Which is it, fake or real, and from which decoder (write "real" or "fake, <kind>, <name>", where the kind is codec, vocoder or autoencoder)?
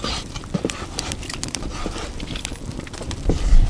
fake, vocoder, BigVGAN v2